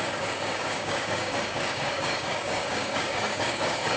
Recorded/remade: remade